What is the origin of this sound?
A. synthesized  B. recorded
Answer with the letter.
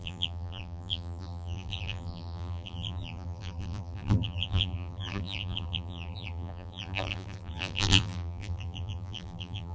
A